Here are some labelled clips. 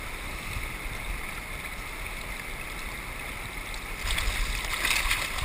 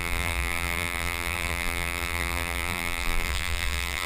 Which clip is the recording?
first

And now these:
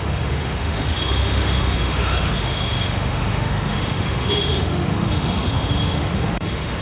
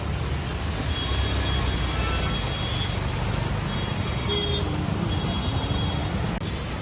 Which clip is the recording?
second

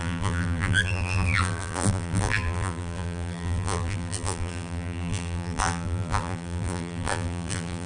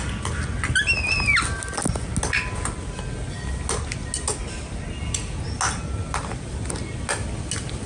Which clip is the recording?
second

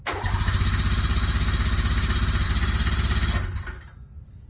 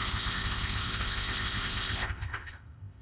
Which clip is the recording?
first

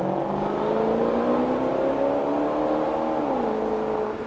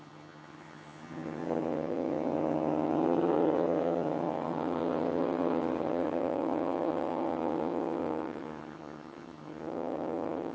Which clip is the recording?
first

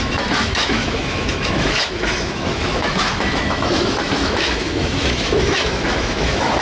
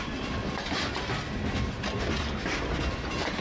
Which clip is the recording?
second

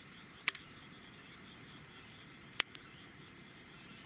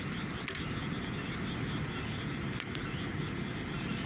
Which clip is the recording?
second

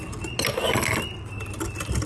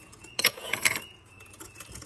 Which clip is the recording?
first